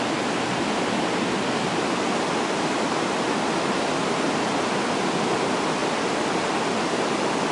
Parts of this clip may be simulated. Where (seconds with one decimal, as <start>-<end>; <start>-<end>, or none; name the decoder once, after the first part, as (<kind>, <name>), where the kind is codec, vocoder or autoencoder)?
none